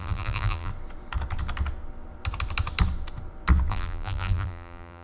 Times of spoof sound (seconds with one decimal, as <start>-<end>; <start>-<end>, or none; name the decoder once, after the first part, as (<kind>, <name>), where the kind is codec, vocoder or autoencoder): 0.0-0.7 (vocoder, BigVGAN v2); 3.7-5.0